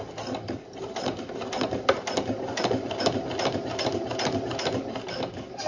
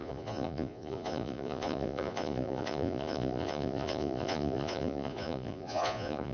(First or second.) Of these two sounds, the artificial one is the second